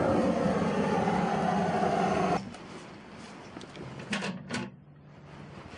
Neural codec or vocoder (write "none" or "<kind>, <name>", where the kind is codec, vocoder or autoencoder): vocoder, BigVGAN v2